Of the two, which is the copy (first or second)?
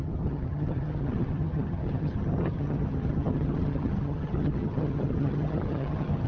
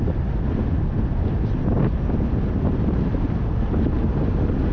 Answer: first